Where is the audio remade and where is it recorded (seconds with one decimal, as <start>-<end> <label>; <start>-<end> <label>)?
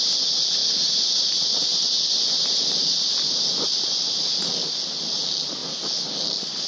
0.0-6.7 recorded